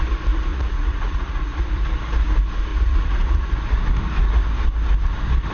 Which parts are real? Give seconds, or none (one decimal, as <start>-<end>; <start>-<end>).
0.0-0.5; 1.6-2.7; 3.5-5.5